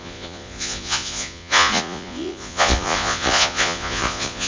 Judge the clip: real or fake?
fake